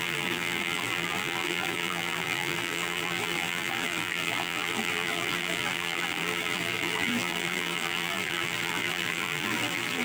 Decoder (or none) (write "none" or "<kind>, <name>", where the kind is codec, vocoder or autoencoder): vocoder, BigVGAN v2